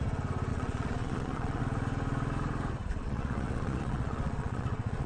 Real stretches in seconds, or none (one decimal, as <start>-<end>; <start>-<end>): 0.0-0.5; 1.6-2.8